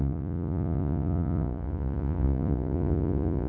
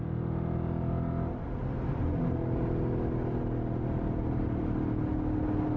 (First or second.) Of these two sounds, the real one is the second